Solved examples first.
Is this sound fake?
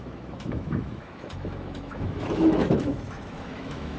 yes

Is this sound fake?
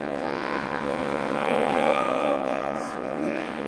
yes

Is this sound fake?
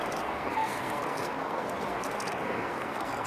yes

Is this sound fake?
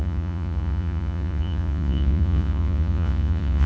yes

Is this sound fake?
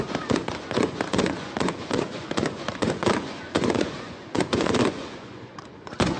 yes